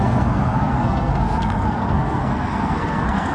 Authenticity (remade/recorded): remade